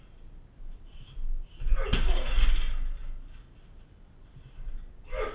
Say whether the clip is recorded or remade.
recorded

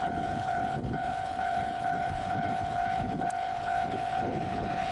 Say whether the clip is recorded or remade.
remade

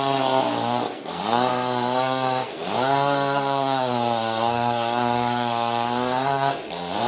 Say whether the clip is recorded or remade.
remade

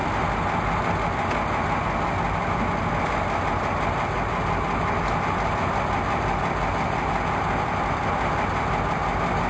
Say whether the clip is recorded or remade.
recorded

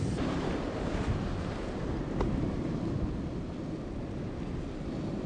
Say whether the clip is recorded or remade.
recorded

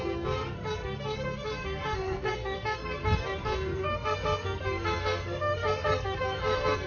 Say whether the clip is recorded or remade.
remade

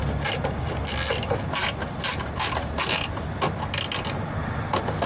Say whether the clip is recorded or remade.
recorded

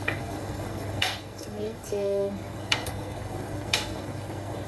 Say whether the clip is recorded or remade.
remade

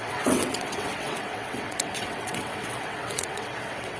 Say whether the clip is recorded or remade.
remade